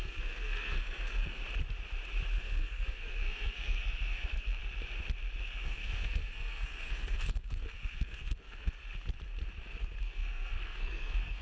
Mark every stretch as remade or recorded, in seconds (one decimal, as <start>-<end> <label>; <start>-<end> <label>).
0.0-1.4 remade; 1.4-2.4 recorded; 2.4-4.6 remade; 4.6-5.4 recorded; 5.4-8.8 remade; 8.8-10.0 recorded; 10.0-11.4 remade